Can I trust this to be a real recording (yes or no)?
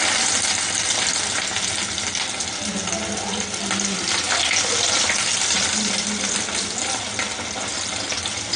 yes